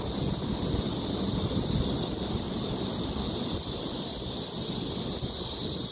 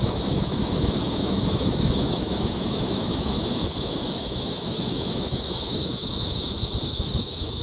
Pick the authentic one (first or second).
first